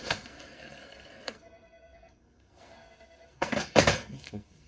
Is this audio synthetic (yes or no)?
yes